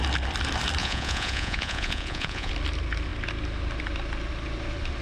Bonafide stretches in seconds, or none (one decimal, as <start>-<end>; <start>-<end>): 0.0-0.8; 2.5-5.0